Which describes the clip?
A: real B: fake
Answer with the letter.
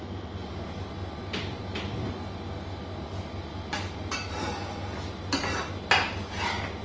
A